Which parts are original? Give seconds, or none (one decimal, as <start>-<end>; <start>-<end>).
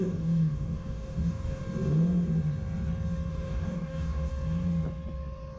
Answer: 1.6-3.3; 4.3-5.6